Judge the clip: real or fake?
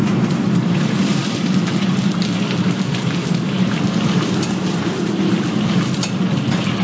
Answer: real